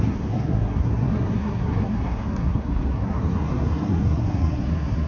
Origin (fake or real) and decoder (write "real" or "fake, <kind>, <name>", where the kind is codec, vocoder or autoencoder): fake, codec, SNAC